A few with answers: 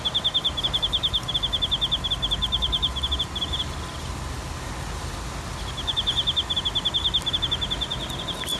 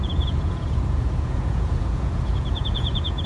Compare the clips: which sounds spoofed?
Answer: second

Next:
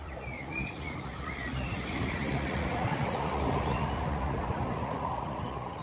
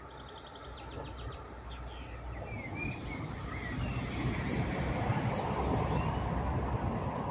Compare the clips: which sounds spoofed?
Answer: first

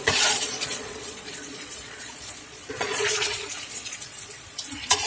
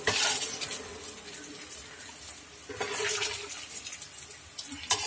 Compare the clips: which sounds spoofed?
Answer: first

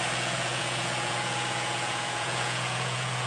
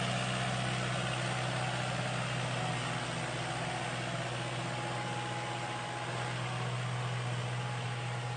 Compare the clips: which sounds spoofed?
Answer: first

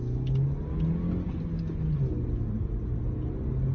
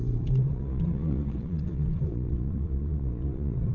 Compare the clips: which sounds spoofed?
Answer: second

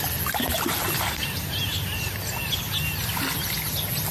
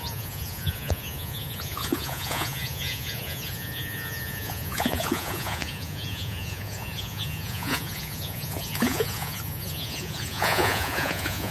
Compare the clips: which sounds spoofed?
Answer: second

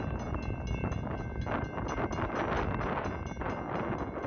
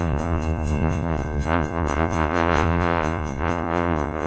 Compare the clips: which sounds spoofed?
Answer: second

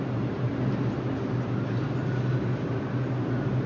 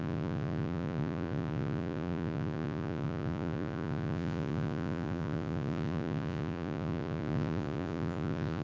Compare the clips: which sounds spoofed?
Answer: second